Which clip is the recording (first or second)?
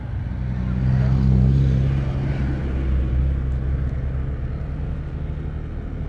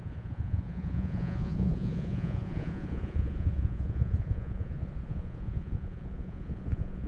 first